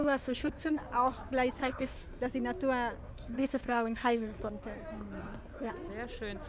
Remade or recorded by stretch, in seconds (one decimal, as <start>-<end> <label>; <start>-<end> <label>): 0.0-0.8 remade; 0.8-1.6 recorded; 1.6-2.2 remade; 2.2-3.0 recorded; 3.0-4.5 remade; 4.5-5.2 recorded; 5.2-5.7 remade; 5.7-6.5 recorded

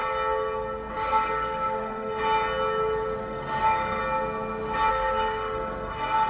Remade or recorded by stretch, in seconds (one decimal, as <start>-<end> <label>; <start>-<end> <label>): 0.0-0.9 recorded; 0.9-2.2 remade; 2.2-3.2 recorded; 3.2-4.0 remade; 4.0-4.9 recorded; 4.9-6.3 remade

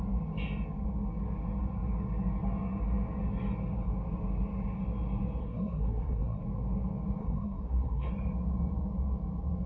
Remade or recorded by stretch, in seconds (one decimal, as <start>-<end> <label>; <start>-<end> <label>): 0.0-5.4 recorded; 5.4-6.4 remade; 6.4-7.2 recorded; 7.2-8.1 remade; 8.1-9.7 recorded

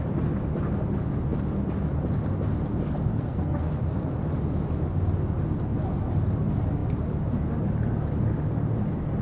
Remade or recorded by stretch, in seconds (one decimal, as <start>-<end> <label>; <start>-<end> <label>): 0.0-3.1 recorded; 3.1-3.8 remade; 3.8-9.2 recorded

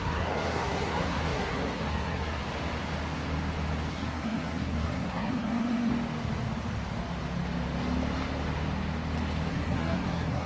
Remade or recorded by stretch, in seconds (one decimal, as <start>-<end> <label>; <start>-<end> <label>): 0.0-2.4 remade; 2.4-3.9 recorded; 3.9-5.9 remade; 5.9-9.5 recorded; 9.5-10.5 remade

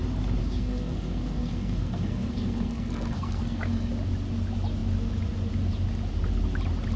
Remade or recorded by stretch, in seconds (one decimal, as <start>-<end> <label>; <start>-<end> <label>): 0.0-0.4 recorded; 0.4-3.9 remade; 3.9-7.0 recorded